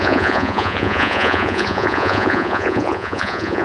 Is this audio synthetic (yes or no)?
yes